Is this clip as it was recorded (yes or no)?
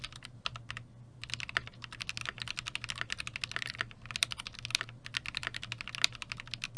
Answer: yes